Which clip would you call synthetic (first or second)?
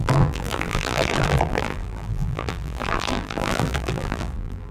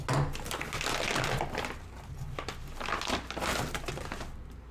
first